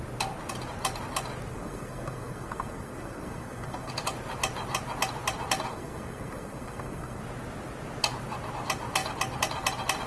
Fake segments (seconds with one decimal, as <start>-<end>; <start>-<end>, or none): 1.5-3.9; 5.7-7.2